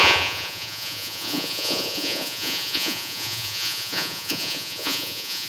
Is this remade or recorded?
remade